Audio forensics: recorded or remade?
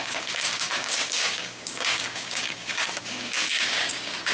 remade